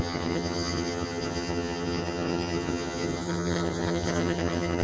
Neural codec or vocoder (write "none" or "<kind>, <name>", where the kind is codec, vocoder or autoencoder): vocoder, HiFi-GAN